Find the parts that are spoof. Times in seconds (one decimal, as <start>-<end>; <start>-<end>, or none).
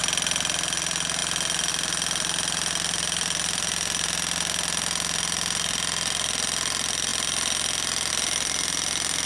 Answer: none